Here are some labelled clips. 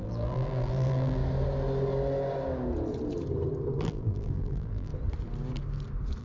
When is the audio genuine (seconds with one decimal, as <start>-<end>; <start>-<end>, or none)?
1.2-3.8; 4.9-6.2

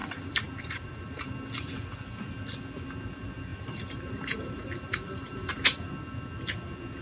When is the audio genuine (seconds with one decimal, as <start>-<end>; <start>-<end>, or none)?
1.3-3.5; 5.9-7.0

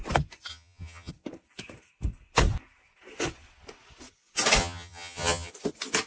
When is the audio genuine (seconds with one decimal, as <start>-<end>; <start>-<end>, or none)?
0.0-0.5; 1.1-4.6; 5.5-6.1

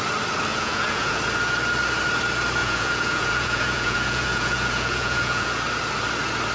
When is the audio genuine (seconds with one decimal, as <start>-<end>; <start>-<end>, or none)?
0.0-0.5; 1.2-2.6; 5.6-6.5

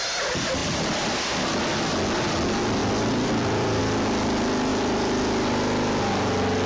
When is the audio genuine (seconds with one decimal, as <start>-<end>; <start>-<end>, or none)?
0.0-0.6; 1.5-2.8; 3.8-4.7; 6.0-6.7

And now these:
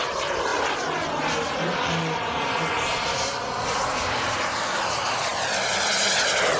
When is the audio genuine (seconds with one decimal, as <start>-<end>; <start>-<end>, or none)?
0.0-6.6

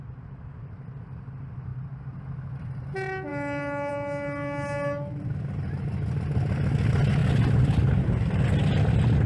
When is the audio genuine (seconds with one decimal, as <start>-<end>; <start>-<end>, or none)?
0.0-3.3; 3.9-9.3